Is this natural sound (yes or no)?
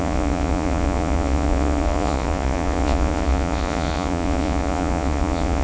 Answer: no